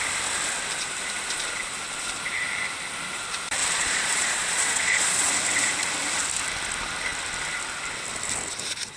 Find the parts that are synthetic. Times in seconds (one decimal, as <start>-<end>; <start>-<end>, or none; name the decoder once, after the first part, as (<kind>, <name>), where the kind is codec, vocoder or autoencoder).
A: 3.6-5.3 (vocoder, Vocos)